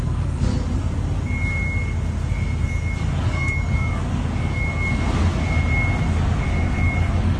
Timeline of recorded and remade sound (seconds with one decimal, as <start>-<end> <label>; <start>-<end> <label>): 0.0-0.5 remade; 0.5-3.2 recorded; 3.2-4.7 remade; 4.7-6.2 recorded; 6.2-7.4 remade